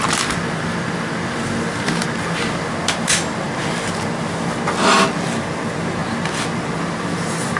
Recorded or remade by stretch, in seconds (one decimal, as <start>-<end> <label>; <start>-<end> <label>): 0.0-7.6 recorded